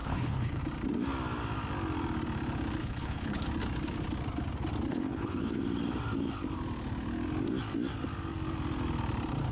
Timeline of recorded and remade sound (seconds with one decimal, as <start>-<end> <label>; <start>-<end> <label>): 0.0-0.6 remade; 0.6-2.8 recorded; 2.8-3.5 remade; 3.5-4.9 recorded; 4.9-5.6 remade; 5.6-9.5 recorded